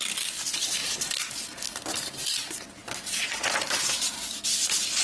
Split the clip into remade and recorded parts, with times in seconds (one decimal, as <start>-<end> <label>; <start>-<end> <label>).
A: 0.0-0.8 recorded; 0.8-1.4 remade; 1.4-5.0 recorded